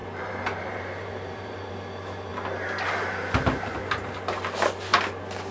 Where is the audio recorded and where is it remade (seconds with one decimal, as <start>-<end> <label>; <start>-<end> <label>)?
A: 0.0-1.7 remade; 1.7-5.5 recorded

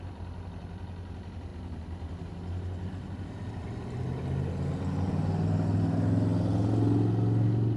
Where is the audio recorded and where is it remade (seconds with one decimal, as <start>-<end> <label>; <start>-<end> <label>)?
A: 0.0-7.8 recorded

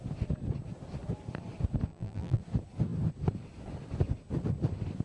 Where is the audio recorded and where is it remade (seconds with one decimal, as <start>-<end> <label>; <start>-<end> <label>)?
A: 0.0-1.9 recorded; 1.9-2.4 remade; 2.4-5.0 recorded

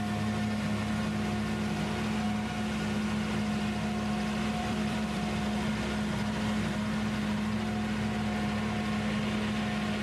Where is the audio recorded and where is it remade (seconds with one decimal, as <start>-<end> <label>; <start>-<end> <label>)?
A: 0.0-4.6 recorded; 4.6-5.2 remade; 5.2-10.0 recorded

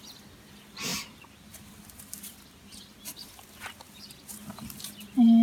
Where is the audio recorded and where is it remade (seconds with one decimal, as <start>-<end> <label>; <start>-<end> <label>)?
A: 0.0-0.9 recorded; 0.9-4.1 remade; 4.1-5.4 recorded

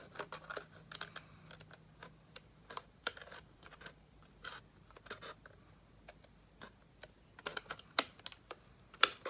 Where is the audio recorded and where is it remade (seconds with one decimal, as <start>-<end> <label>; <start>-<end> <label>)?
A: 0.0-2.0 recorded; 2.0-4.6 remade; 4.6-7.5 recorded; 7.5-8.2 remade; 8.2-9.3 recorded